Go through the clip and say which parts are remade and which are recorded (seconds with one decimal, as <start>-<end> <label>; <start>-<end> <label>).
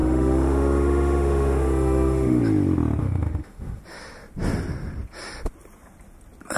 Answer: 0.0-2.4 remade; 2.4-3.0 recorded; 3.0-3.8 remade; 3.8-6.6 recorded